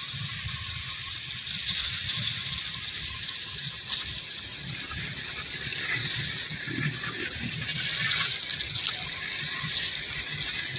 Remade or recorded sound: recorded